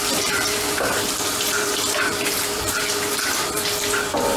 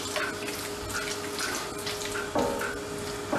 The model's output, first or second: first